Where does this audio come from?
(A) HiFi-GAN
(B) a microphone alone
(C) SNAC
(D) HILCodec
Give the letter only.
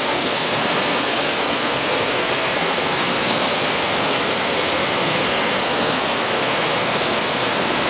C